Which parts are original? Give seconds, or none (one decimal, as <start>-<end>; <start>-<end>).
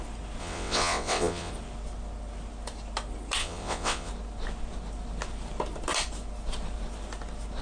0.0-0.4; 1.5-3.4; 4.1-7.6